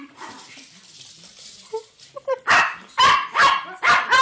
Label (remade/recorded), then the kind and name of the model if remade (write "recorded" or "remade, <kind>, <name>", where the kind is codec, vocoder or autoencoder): recorded